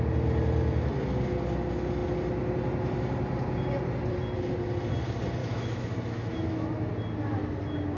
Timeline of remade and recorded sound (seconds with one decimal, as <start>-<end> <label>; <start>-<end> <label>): 0.0-5.4 recorded; 5.4-6.9 remade; 6.9-8.0 recorded